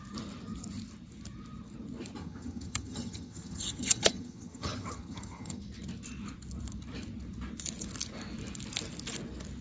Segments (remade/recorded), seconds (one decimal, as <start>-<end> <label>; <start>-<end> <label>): 0.0-2.2 recorded; 2.2-5.6 remade; 5.6-9.6 recorded